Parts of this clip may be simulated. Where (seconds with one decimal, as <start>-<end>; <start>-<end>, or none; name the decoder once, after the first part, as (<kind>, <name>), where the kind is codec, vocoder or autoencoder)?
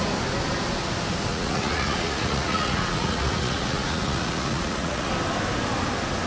1.3-5.1 (vocoder, Vocos)